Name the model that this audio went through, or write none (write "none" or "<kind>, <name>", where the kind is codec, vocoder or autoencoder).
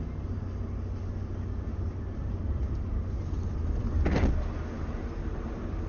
none